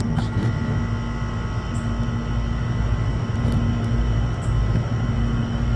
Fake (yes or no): no